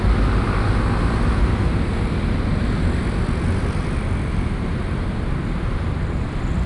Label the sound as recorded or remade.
recorded